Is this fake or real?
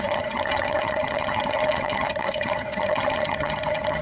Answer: fake